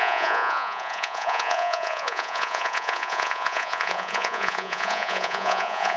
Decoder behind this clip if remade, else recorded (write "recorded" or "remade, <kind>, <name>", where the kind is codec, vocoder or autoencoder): remade, vocoder, Vocos